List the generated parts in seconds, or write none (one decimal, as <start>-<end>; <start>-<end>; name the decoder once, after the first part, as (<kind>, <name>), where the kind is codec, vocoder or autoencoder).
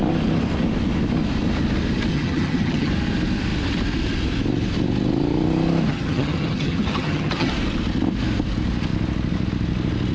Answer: 2.1-2.9 (vocoder, HiFi-GAN); 5.9-7.5